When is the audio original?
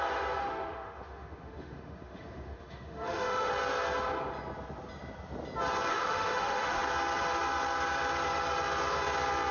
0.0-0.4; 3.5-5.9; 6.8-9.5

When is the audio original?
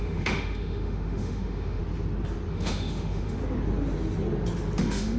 1.8-2.5; 3.4-4.8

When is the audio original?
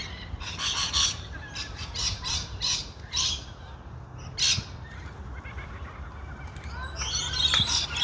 2.8-7.2